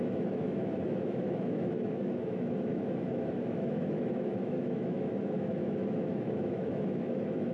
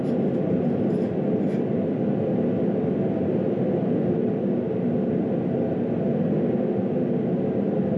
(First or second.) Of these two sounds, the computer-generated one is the first